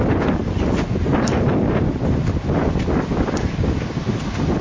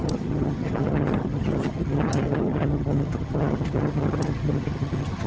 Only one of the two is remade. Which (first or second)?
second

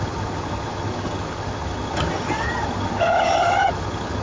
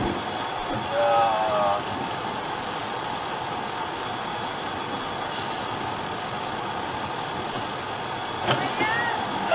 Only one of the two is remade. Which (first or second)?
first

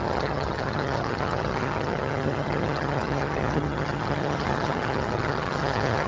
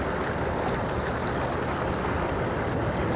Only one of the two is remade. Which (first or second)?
first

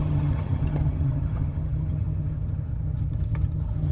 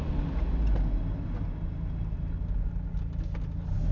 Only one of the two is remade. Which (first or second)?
first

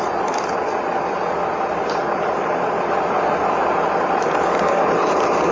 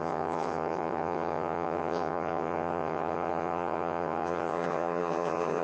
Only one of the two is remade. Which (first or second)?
second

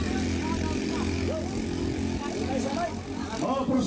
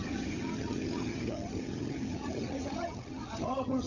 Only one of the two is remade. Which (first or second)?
second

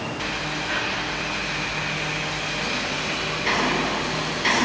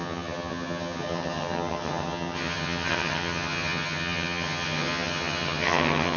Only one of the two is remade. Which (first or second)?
second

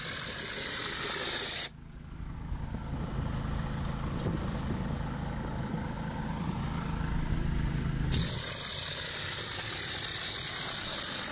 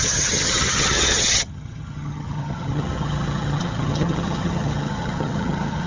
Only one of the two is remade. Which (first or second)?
second